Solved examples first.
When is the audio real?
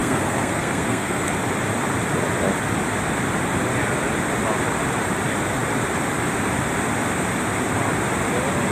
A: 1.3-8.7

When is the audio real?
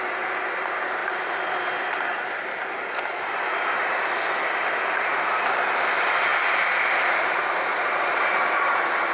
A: 0.0-9.1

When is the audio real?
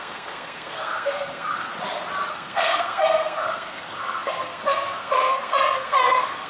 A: 1.7-2.3